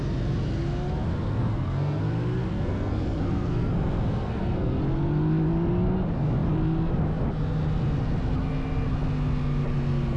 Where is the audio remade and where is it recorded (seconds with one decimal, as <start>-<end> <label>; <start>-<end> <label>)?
0.0-1.4 recorded; 1.4-2.0 remade; 2.0-2.5 recorded; 2.5-4.8 remade; 4.8-10.2 recorded